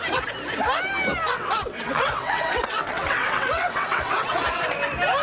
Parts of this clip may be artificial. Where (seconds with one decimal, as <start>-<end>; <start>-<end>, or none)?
1.3-4.4